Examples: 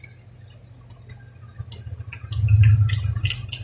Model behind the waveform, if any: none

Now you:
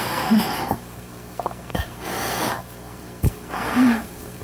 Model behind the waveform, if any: codec, SNAC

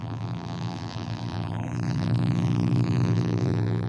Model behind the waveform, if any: vocoder, BigVGAN v2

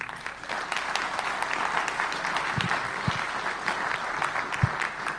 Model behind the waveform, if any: none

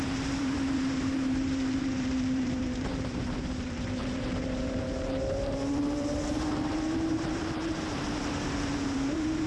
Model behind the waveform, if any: vocoder, BigVGAN v2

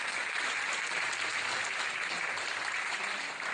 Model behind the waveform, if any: none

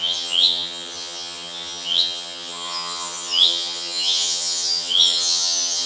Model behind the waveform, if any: vocoder, HiFi-GAN